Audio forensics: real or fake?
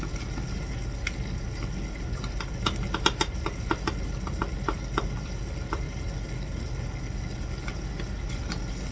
real